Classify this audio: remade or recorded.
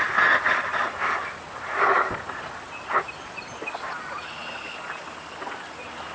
recorded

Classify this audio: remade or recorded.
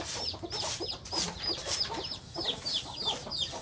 remade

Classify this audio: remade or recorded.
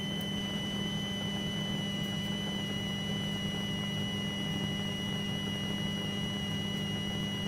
recorded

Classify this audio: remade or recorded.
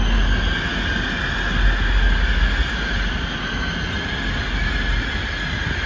recorded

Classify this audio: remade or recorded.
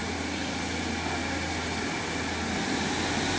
recorded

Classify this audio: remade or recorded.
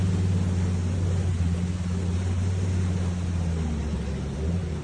recorded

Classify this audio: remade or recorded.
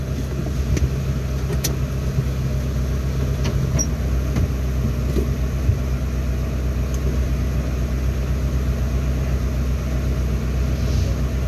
recorded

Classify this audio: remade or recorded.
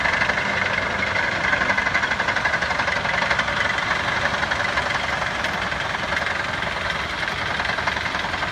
recorded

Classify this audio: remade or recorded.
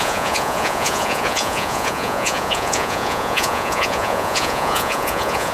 remade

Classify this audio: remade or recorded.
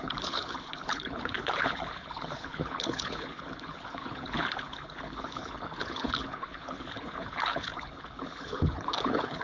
remade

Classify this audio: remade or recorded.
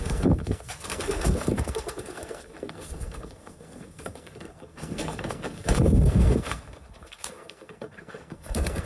remade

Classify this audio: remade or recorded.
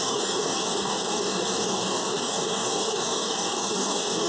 remade